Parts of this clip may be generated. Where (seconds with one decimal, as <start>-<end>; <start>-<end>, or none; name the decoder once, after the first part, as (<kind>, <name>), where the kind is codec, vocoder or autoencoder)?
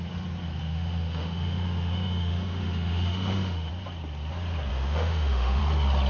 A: 0.6-3.7 (autoencoder, DAC-VAE); 4.7-5.6